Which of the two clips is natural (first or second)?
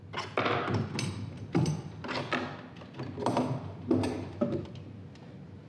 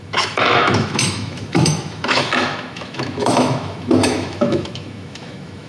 first